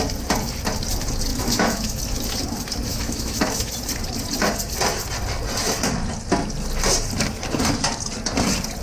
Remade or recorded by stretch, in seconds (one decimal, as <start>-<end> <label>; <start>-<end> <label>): 0.0-1.3 recorded; 1.3-2.0 remade; 2.0-2.9 recorded; 2.9-3.7 remade; 3.7-8.8 recorded